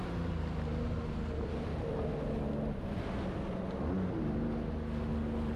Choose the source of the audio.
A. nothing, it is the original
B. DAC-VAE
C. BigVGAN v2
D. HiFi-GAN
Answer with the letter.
A